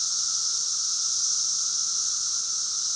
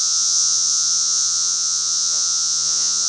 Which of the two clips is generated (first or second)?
second